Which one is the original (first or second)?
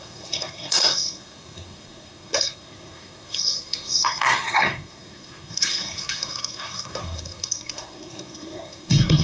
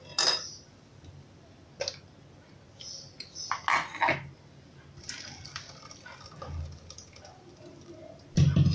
second